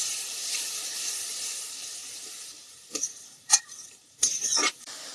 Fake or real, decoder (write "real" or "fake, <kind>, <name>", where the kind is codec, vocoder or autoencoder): fake, vocoder, BigVGAN v2